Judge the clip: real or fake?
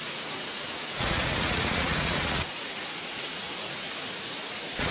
fake